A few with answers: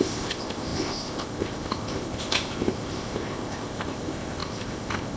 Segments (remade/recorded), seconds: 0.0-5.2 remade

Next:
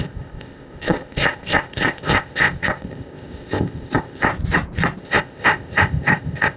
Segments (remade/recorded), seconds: 0.0-4.3 remade; 4.3-5.0 recorded; 5.0-6.6 remade

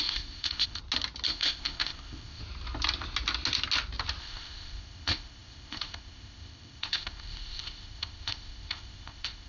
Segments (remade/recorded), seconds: 0.0-0.8 remade; 0.8-1.3 recorded; 1.3-2.4 remade; 2.4-4.2 recorded; 4.2-9.5 remade

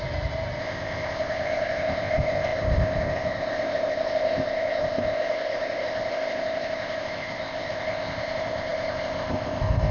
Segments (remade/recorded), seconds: 0.0-0.6 recorded; 0.6-9.9 remade

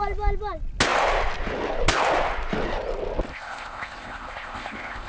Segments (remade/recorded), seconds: 0.0-3.3 recorded; 3.3-5.1 remade

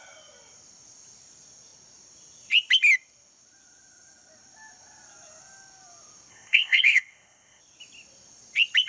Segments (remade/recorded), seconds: 0.0-6.3 recorded; 6.3-7.6 remade; 7.6-8.9 recorded

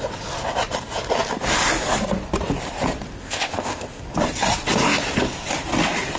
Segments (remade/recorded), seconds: 0.0-3.2 recorded; 3.2-4.0 remade; 4.0-6.2 recorded